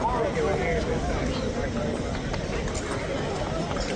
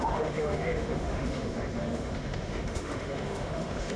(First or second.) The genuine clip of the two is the first